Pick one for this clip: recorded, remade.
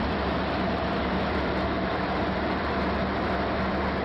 remade